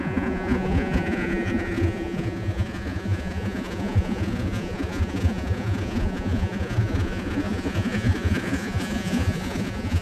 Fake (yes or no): yes